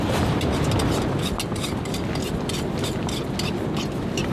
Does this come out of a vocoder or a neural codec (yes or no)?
no